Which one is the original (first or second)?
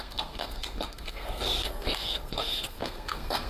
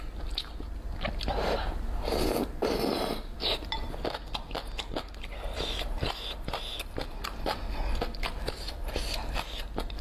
second